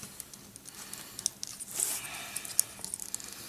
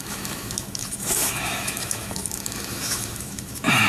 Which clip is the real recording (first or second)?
first